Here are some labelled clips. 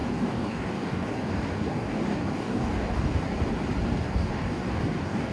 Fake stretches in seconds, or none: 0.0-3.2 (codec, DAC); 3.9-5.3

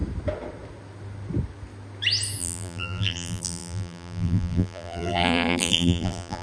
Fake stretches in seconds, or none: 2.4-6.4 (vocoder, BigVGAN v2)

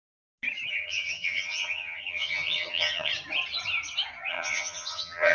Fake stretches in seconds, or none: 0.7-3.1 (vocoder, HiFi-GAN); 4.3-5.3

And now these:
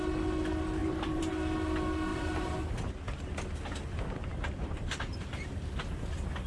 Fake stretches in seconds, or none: 0.8-1.3 (vocoder, BigVGAN v2); 2.1-2.9; 4.3-5.8